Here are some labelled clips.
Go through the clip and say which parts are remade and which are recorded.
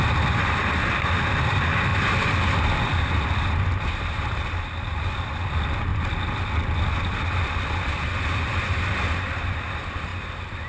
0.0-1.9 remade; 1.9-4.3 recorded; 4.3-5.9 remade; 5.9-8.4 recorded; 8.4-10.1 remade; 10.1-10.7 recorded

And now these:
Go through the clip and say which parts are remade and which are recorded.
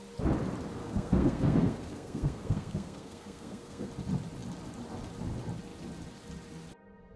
0.0-0.8 recorded; 0.8-3.9 remade; 3.9-7.2 recorded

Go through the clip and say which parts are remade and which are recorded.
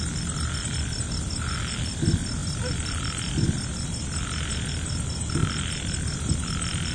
0.0-2.4 recorded; 2.4-3.3 remade; 3.3-5.4 recorded; 5.4-6.3 remade; 6.3-6.9 recorded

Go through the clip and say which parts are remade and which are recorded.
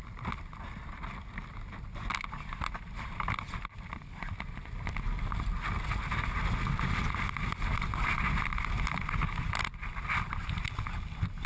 0.0-11.5 recorded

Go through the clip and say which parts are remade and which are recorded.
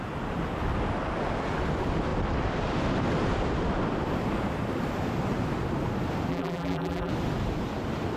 0.0-6.3 recorded; 6.3-7.1 remade; 7.1-8.2 recorded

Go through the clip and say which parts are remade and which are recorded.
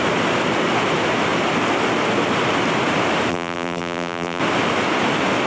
0.0-3.3 recorded; 3.3-4.4 remade; 4.4-5.5 recorded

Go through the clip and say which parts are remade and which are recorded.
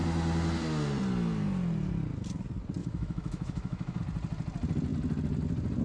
0.0-2.8 recorded; 2.8-4.0 remade; 4.0-5.8 recorded